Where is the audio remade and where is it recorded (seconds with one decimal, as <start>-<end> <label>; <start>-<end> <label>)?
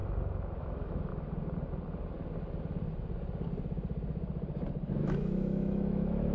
0.0-0.6 recorded; 0.6-1.1 remade; 1.1-4.9 recorded; 4.9-6.3 remade